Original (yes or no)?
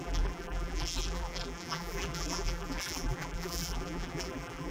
no